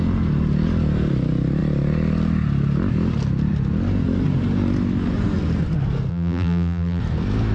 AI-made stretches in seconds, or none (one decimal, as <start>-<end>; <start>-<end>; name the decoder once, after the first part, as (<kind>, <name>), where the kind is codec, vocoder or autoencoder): 6.1-7.0 (vocoder, BigVGAN v2)